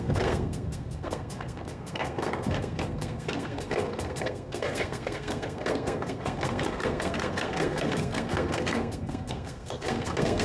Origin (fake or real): fake